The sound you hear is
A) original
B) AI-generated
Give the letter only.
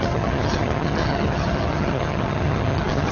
B